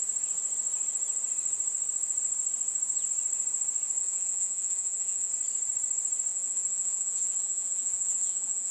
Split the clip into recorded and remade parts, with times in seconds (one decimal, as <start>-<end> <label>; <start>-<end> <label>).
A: 0.0-4.0 recorded; 4.0-5.3 remade; 5.3-6.3 recorded; 6.3-8.7 remade